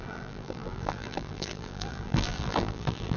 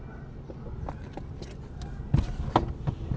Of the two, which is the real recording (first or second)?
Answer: second